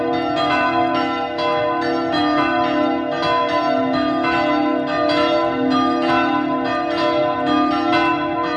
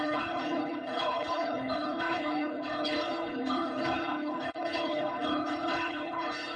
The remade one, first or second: second